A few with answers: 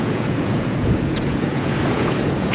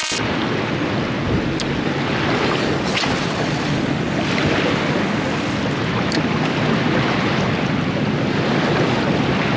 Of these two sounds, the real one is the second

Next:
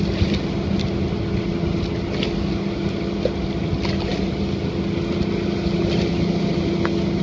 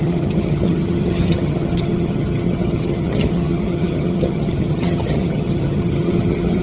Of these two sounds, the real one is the first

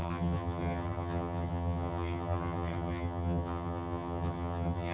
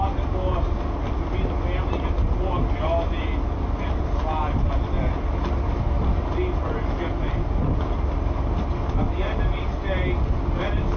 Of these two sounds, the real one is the second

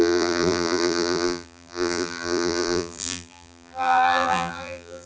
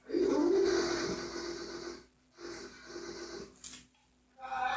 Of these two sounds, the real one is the second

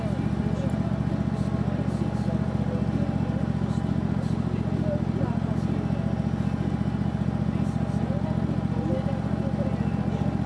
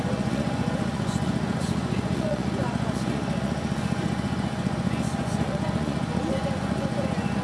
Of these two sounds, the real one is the first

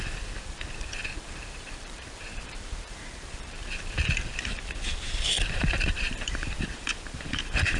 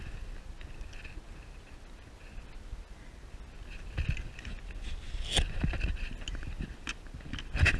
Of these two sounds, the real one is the second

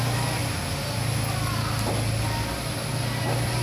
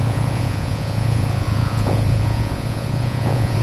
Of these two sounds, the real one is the first